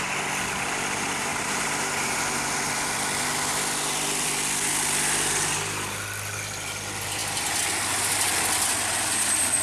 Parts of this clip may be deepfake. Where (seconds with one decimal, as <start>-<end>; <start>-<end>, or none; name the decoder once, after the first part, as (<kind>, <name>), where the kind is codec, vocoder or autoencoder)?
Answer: 1.3-2.2 (vocoder, BigVGAN v2)